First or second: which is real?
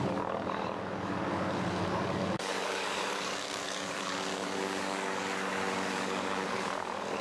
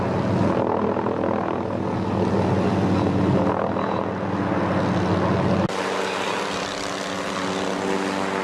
second